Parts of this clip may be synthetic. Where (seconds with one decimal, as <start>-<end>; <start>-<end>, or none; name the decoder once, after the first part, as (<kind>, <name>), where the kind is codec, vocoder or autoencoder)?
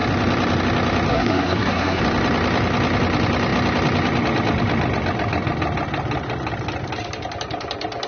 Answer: 1.1-2.0 (codec, SNAC)